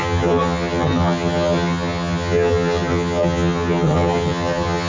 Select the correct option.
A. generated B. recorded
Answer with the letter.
A